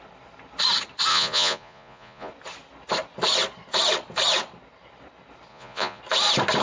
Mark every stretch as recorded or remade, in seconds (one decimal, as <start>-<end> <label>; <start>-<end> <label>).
0.0-1.1 recorded; 1.1-2.3 remade; 2.3-5.5 recorded; 5.5-6.0 remade; 6.0-6.6 recorded